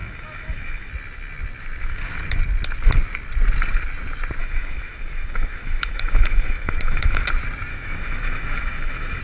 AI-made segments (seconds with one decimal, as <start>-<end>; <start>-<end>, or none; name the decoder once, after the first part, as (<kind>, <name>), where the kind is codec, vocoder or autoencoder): 0.0-0.9 (autoencoder, DAC-VAE); 4.4-7.2; 7.7-9.2